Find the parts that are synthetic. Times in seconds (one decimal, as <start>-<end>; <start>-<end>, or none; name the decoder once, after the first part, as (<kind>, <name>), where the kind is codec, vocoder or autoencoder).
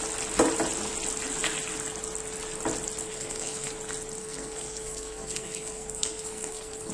3.1-3.7 (codec, SNAC); 4.2-6.9